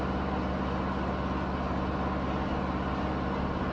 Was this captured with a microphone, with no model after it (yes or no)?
yes